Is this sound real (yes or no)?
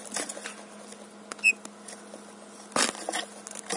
yes